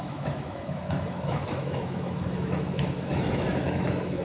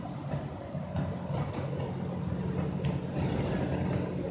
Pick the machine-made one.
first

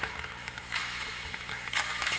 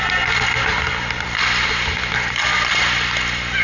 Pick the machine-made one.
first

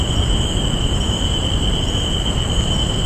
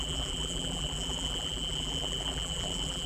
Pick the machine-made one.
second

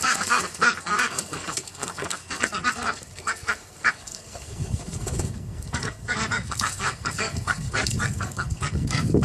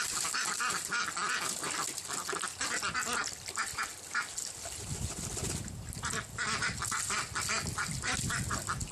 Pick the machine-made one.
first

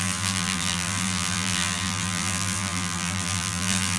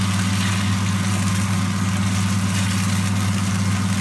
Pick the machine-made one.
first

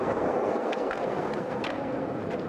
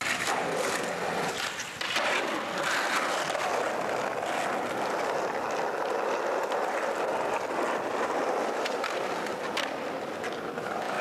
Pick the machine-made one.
first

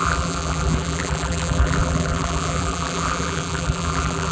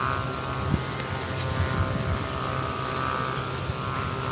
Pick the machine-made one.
first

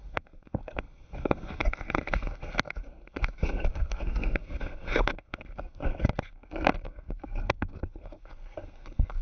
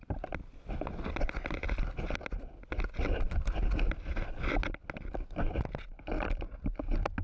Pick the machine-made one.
first